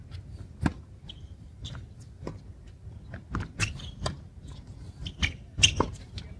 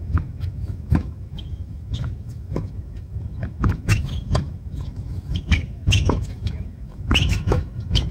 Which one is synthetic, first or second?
second